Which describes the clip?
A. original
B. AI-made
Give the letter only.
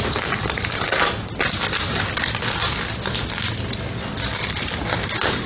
A